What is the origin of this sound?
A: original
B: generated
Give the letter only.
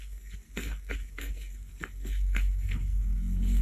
B